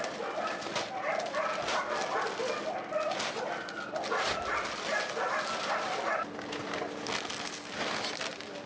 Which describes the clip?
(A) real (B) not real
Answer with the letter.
A